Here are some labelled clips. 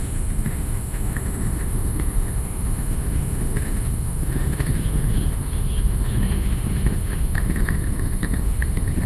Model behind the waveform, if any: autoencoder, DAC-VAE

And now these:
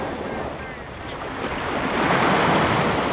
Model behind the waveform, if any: none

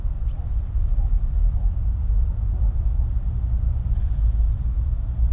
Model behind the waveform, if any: vocoder, BigVGAN v2